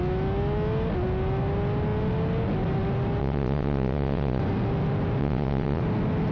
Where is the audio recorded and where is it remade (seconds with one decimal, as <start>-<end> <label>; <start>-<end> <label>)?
0.0-3.2 recorded; 3.2-4.4 remade; 4.4-5.2 recorded; 5.2-5.8 remade; 5.8-6.3 recorded